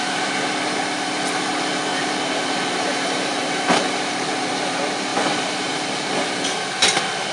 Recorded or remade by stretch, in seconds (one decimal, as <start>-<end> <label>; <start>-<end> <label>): 0.0-1.9 recorded; 1.9-4.5 remade; 4.5-5.1 recorded; 5.1-5.7 remade; 5.7-7.3 recorded